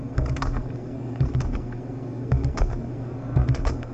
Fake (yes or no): yes